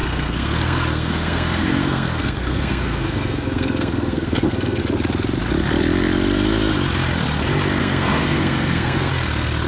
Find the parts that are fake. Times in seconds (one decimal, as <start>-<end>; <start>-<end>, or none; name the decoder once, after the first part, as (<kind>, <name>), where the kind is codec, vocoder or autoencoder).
0.0-4.8 (codec, SNAC); 7.8-9.1